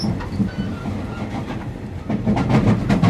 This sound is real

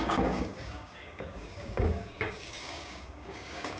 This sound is fake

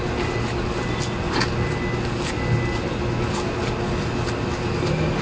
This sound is real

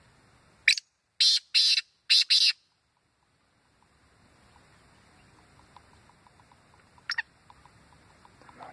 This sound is real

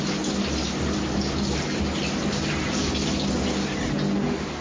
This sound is real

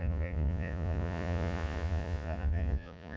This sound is fake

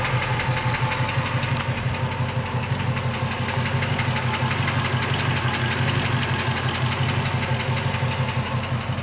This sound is real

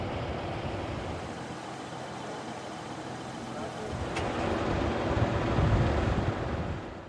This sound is real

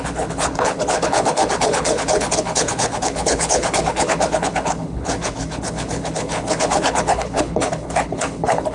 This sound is fake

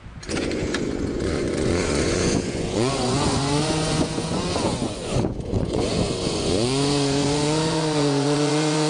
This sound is fake